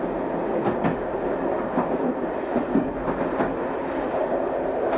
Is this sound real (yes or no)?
yes